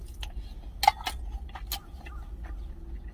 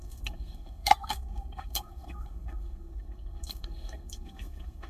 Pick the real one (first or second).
first